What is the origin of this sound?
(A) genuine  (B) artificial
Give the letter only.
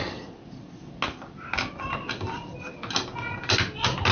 A